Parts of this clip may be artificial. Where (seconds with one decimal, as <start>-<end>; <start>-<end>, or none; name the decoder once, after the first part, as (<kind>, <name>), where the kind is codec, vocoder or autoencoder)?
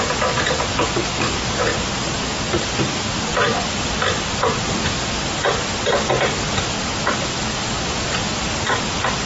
3.3-6.3 (vocoder, BigVGAN v2); 8.2-9.3